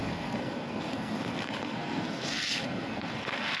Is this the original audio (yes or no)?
no